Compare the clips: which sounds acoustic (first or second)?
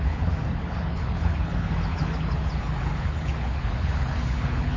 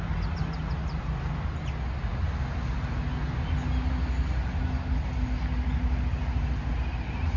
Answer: second